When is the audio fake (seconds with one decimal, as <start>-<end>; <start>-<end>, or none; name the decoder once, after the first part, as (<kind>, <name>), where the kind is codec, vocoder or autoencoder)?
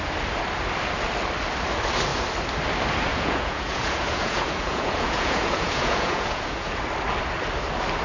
3.1-6.8 (vocoder, Vocos)